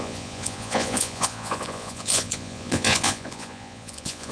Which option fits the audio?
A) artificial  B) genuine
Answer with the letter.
A